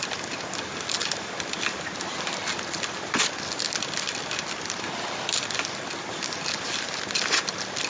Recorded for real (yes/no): yes